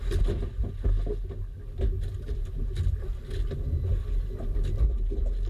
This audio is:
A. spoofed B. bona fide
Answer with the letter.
B